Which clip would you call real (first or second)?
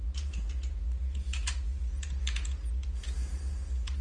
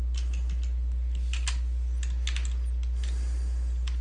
second